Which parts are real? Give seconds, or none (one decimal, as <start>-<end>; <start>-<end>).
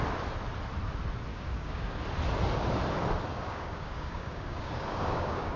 0.0-1.3; 2.0-3.3